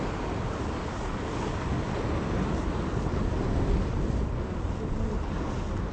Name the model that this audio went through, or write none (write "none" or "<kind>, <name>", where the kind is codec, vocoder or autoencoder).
none